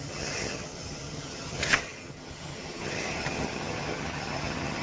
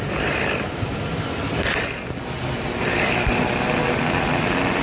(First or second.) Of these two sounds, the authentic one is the second